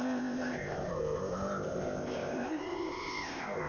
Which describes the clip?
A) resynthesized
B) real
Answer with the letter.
A